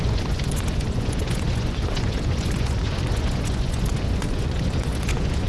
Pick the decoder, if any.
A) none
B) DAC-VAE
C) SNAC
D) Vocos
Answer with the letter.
D